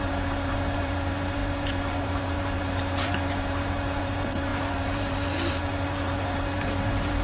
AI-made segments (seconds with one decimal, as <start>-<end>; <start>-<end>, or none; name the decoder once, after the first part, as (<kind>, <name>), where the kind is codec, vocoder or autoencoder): 0.0-7.2 (vocoder, BigVGAN v2)